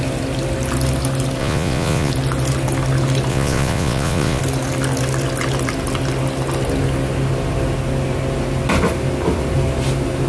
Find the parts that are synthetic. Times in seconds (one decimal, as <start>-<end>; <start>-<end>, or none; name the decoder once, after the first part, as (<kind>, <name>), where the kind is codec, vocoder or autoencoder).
1.4-2.1 (vocoder, Vocos); 3.3-4.4